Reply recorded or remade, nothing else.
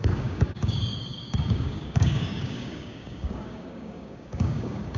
remade